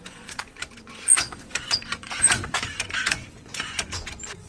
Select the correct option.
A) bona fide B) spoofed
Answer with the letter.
B